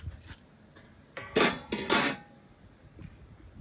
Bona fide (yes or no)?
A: yes